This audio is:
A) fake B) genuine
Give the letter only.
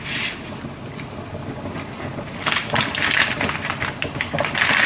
B